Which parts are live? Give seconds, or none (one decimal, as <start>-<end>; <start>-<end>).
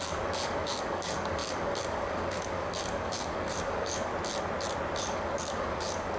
4.1-5.0